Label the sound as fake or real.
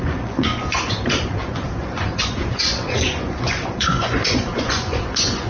fake